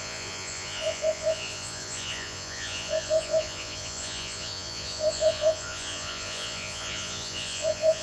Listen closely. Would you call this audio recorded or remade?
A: remade